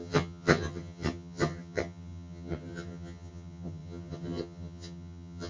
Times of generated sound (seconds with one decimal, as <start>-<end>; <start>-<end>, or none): 0.0-5.5